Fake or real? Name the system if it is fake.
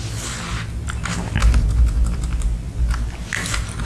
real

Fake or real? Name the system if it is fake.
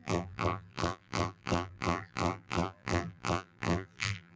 fake, vocoder, BigVGAN v2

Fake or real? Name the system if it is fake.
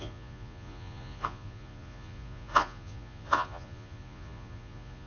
fake, vocoder, Vocos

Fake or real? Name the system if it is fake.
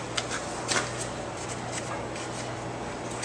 real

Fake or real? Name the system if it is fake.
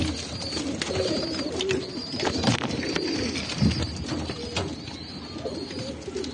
real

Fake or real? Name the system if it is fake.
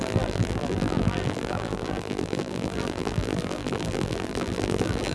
fake, vocoder, BigVGAN v2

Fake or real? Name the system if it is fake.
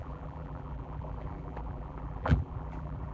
fake, vocoder, BigVGAN v2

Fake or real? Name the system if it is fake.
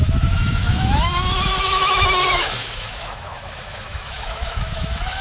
fake, autoencoder, DAC-VAE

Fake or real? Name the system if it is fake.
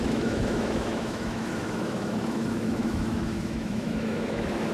fake, autoencoder, DAC-VAE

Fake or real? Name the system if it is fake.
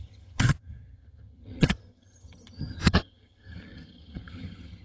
fake, vocoder, HiFi-GAN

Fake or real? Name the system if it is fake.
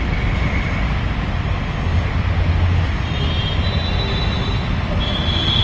real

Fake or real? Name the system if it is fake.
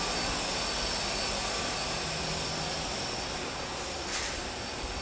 real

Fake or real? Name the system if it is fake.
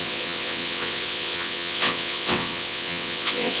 fake, vocoder, WaveNeXt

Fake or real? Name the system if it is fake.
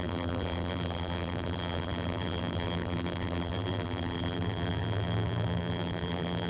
fake, vocoder, BigVGAN v2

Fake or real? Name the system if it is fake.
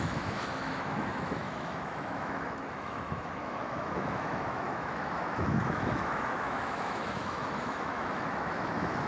fake, autoencoder, DAC-VAE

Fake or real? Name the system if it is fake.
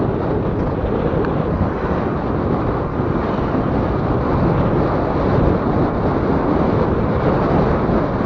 real